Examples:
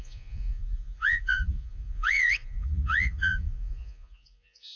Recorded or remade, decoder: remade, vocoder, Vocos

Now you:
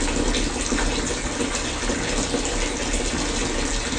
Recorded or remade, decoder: recorded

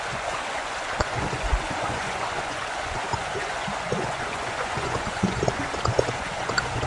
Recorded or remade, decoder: remade, vocoder, Vocos